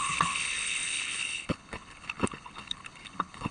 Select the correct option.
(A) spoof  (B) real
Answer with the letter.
A